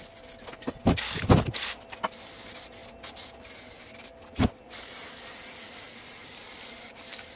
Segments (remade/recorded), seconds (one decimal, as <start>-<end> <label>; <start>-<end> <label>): 0.0-7.4 recorded